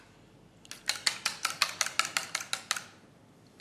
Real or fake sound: real